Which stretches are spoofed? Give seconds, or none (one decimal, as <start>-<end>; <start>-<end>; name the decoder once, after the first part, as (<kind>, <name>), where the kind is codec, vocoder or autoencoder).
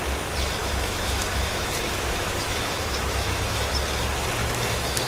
0.6-3.7 (autoencoder, DAC-VAE); 4.4-5.1